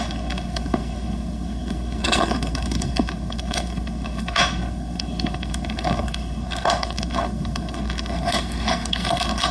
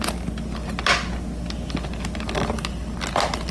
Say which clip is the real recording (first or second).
second